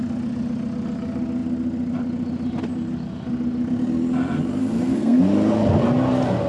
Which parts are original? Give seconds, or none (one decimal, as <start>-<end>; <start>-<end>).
0.0-4.6; 5.2-6.5